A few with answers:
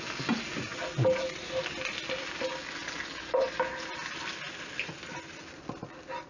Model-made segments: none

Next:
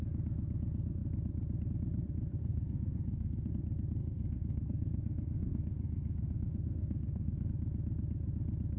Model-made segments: 2.4-3.5 (codec, SNAC); 4.0-7.5

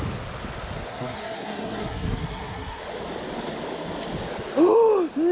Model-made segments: 0.9-2.8 (codec, SNAC)

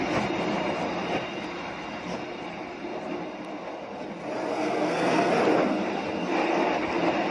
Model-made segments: 4.5-5.3 (codec, SNAC)

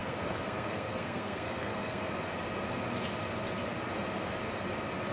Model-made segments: 0.0-2.1 (codec, SNAC)

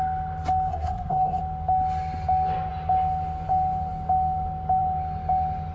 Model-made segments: 0.7-1.4 (codec, SNAC)

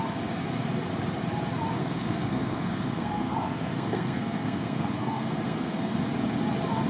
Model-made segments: 1.8-5.9 (codec, SNAC)